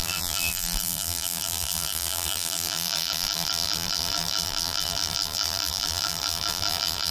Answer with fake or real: fake